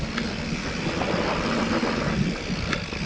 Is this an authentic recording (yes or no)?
yes